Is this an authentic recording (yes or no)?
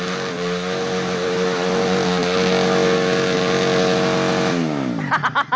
yes